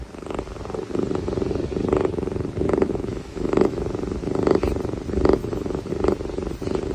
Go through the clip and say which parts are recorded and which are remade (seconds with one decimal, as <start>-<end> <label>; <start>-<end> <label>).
0.0-2.8 recorded; 2.8-3.8 remade; 3.8-5.4 recorded; 5.4-5.9 remade; 5.9-6.9 recorded